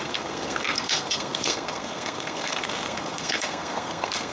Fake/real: fake